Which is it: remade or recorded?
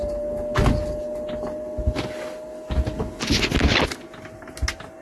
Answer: recorded